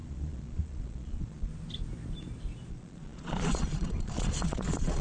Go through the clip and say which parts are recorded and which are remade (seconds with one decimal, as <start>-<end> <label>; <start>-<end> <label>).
0.0-1.5 remade; 1.5-2.7 recorded; 2.7-5.0 remade